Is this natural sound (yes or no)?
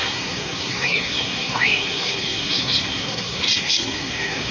no